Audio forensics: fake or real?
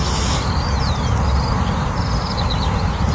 real